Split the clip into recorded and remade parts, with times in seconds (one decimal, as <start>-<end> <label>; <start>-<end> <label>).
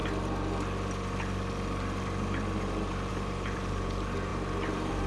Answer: 0.0-3.1 recorded; 3.1-5.1 remade